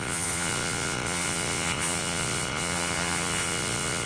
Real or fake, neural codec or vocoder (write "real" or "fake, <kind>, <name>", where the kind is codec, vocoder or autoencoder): fake, vocoder, Vocos